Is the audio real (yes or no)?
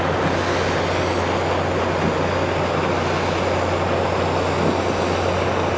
yes